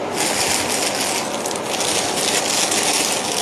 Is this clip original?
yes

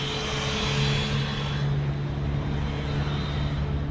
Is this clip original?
yes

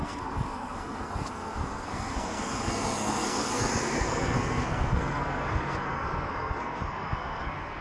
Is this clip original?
no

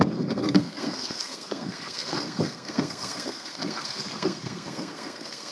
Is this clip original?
no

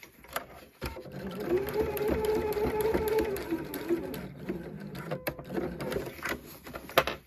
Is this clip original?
yes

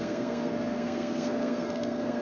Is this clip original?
no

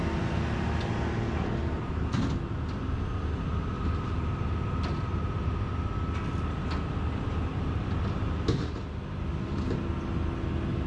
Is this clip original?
yes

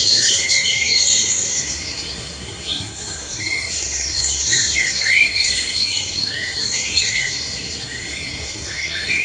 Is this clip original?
no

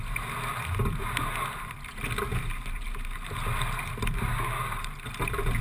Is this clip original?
yes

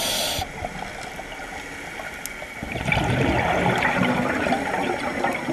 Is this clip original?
yes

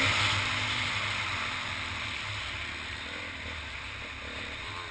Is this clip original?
yes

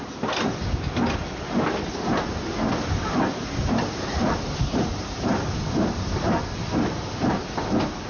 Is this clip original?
yes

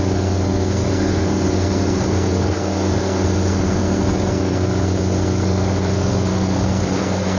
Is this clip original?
no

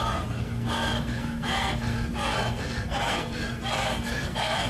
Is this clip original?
no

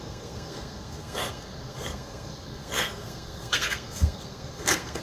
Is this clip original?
no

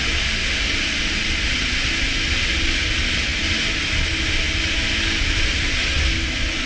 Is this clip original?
yes